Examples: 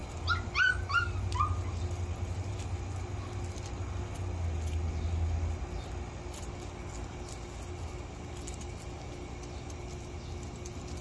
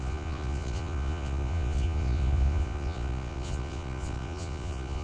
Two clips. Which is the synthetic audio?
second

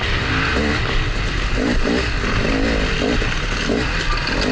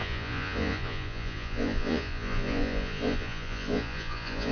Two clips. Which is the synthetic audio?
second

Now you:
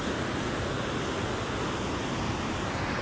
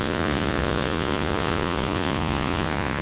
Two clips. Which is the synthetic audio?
second